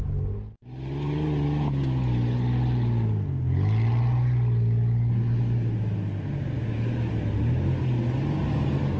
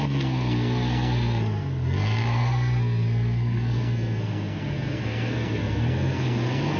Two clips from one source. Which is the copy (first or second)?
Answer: second